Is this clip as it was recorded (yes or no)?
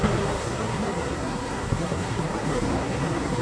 no